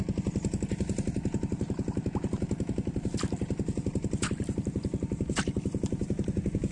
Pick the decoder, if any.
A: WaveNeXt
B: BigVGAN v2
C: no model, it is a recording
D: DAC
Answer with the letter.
C